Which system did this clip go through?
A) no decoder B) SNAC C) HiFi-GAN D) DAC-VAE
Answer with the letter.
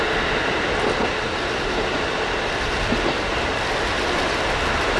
A